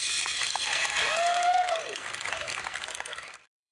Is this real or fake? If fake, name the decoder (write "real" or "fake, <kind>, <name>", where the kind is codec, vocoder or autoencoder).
fake, codec, SNAC